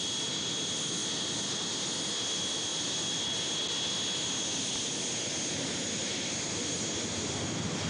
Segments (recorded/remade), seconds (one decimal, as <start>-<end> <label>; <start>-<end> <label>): 0.0-7.9 recorded